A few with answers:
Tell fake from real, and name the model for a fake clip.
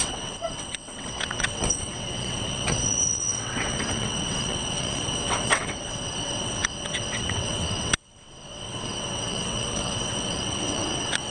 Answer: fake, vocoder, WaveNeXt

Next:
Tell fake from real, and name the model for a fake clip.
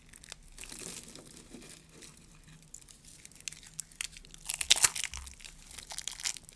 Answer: real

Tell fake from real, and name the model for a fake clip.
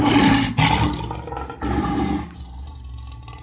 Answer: real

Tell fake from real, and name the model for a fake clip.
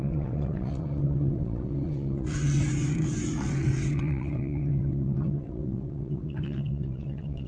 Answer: fake, vocoder, WaveNeXt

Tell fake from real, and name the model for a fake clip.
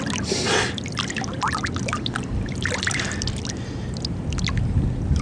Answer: real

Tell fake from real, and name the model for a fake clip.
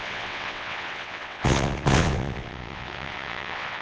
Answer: fake, vocoder, WaveNeXt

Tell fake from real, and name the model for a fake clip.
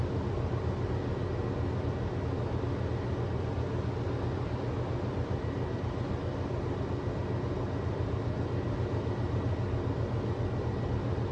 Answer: real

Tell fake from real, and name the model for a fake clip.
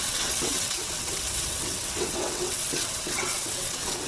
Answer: fake, vocoder, WaveNeXt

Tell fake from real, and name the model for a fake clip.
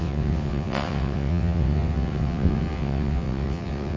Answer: fake, vocoder, WaveNeXt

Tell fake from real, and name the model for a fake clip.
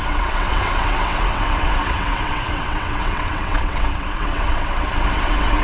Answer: fake, vocoder, WaveNeXt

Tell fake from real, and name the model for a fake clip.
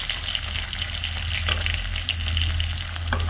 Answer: real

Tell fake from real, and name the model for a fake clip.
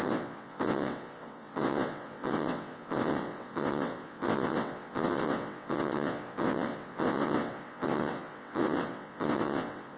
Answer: fake, vocoder, WaveNeXt